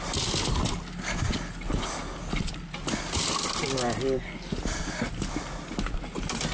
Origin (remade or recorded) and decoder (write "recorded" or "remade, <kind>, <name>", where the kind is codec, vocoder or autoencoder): recorded